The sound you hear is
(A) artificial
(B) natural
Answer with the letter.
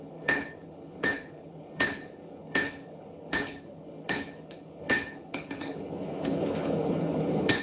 A